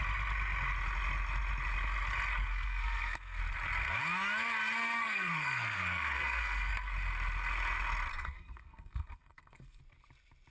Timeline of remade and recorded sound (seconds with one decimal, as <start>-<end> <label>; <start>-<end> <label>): 0.0-2.4 recorded; 2.4-3.4 remade; 3.4-4.8 recorded; 4.8-6.7 remade; 6.7-8.1 recorded; 8.1-9.8 remade; 9.8-10.5 recorded